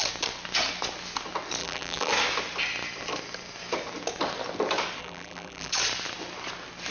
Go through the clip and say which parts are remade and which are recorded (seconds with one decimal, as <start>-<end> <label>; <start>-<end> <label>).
0.0-1.6 recorded; 1.6-2.1 remade; 2.1-5.0 recorded; 5.0-5.7 remade; 5.7-6.9 recorded